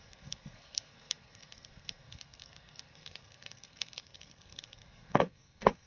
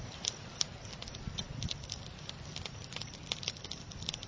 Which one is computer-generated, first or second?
first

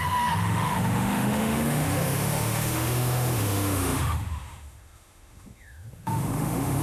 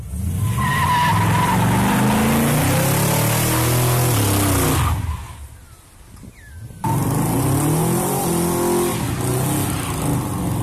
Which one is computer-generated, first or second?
first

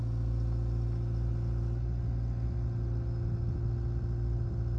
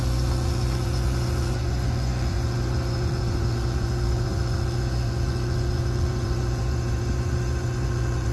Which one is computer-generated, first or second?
second